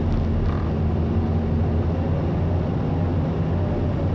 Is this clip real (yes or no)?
yes